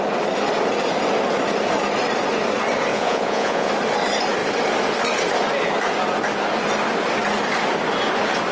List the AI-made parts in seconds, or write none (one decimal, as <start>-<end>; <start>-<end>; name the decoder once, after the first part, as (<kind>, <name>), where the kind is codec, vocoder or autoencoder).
2.9-3.7 (vocoder, Vocos)